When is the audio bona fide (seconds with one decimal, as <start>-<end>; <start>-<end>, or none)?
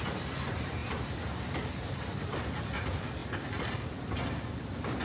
0.0-5.0